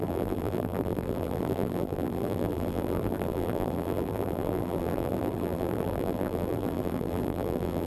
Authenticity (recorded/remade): remade